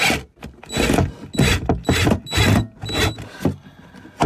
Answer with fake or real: real